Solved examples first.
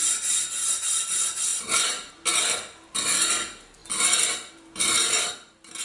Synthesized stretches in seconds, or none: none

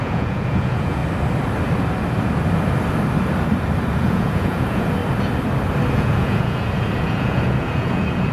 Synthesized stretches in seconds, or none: 0.0-1.0 (vocoder, Vocos); 4.1-5.0; 5.9-8.3

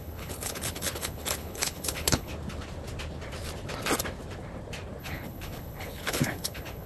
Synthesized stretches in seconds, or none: 0.0-2.3 (codec, HILCodec); 5.0-6.9